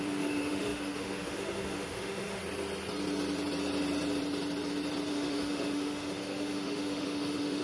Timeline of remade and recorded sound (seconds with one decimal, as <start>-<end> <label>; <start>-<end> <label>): 0.0-2.4 remade; 2.4-5.1 recorded; 5.1-7.6 remade